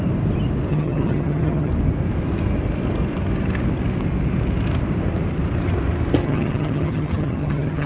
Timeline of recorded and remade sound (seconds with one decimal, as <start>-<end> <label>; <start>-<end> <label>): 0.0-0.7 recorded; 0.7-1.7 remade; 1.7-6.2 recorded; 6.2-7.9 remade